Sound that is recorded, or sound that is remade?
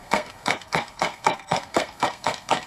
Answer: remade